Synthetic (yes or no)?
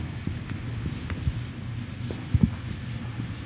no